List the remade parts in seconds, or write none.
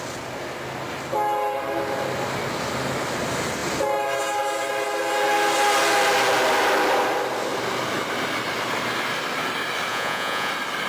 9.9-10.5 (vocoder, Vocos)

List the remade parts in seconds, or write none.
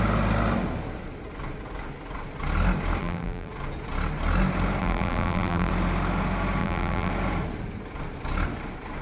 3.0-3.5 (vocoder, BigVGAN v2); 4.8-5.7; 6.6-7.1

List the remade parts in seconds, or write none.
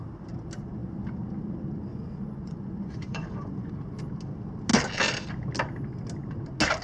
1.9-3.7 (vocoder, Vocos)